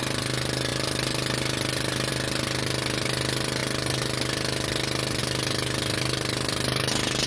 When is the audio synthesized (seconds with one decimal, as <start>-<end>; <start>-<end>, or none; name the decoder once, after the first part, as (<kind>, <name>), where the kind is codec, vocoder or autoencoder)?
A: none